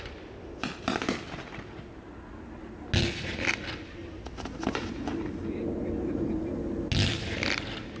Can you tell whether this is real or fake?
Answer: real